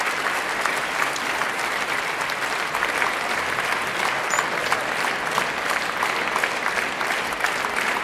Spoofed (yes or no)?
no